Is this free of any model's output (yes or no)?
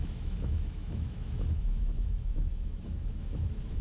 no